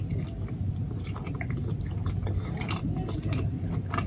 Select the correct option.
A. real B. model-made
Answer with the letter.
A